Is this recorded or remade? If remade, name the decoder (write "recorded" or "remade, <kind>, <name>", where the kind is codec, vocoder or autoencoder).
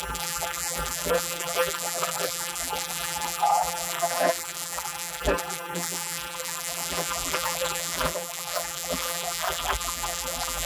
remade, vocoder, BigVGAN v2